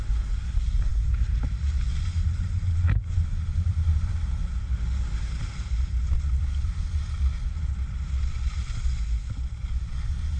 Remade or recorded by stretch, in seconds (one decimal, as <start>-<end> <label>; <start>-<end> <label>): 0.0-10.4 recorded